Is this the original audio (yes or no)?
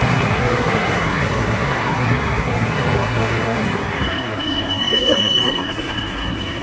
no